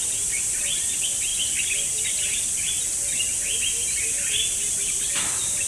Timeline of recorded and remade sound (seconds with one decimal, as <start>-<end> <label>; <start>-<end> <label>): 0.0-5.7 recorded